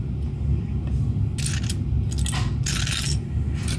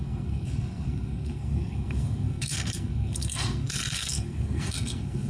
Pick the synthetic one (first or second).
second